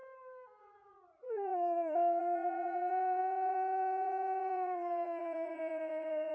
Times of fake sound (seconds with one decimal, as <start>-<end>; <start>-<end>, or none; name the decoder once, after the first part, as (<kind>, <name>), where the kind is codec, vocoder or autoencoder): 0.6-6.3 (vocoder, Vocos)